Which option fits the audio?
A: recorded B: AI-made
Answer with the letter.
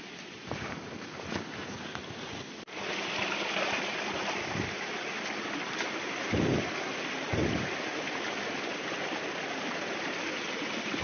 A